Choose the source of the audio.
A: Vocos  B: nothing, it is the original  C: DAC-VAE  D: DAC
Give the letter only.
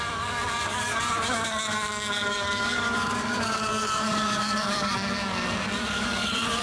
D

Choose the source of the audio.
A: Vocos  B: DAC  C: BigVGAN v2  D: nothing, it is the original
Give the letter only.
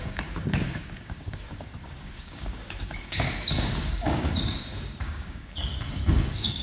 B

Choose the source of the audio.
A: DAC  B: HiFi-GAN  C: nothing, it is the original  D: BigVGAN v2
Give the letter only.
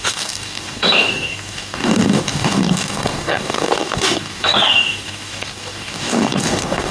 A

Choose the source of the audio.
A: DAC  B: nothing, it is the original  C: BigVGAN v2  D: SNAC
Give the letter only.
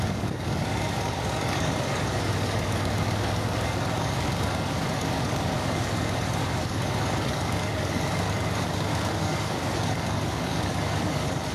A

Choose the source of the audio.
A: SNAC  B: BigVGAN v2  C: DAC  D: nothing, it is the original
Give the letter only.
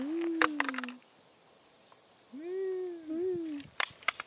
D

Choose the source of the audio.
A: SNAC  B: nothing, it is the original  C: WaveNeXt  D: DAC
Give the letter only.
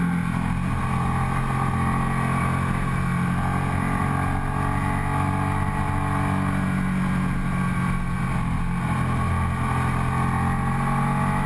B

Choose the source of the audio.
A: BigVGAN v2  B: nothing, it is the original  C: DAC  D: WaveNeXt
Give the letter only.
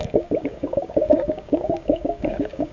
C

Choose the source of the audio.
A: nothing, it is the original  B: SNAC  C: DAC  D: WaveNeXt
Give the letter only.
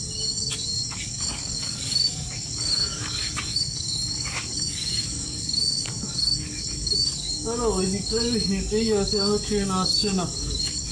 C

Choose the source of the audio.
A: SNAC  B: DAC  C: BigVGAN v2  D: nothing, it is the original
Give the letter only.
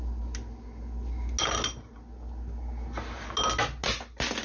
D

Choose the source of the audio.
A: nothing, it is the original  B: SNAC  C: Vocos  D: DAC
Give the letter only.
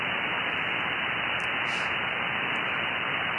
A